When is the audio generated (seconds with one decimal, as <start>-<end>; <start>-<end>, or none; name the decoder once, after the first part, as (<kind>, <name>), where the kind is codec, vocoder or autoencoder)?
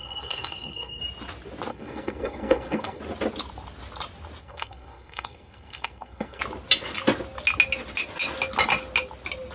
0.0-1.0 (codec, SNAC); 1.7-3.0; 4.4-6.4